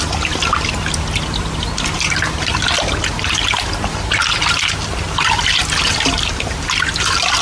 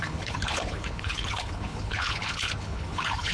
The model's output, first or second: second